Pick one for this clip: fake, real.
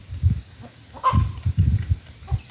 real